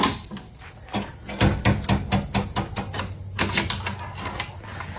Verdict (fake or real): real